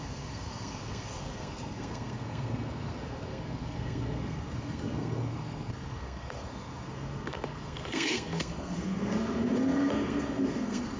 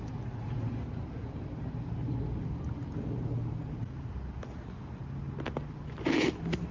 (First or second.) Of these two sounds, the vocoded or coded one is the first